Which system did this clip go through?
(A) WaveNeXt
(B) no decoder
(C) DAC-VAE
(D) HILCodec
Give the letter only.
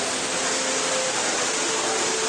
B